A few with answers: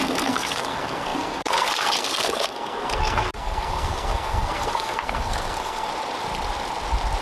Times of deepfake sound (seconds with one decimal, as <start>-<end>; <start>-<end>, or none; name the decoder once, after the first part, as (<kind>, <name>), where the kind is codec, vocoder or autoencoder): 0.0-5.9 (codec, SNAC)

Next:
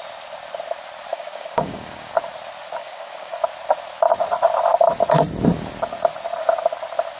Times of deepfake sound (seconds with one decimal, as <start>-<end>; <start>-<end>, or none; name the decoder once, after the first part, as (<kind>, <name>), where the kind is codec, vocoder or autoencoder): 1.1-2.1 (codec, DAC); 2.8-3.4

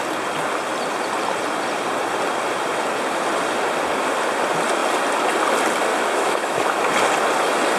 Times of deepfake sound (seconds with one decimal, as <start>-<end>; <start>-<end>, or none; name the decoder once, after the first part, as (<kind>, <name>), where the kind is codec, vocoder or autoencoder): 5.9-6.9 (autoencoder, DAC-VAE)

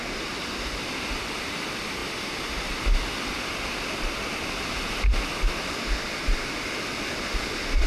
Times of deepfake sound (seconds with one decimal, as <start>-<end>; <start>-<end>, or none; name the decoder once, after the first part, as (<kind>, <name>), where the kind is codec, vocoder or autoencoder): none